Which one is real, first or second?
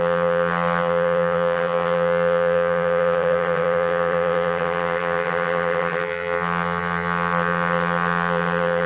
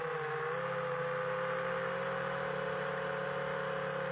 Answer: second